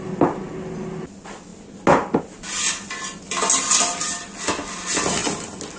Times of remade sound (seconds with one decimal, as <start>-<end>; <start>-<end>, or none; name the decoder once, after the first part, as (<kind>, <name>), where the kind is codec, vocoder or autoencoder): none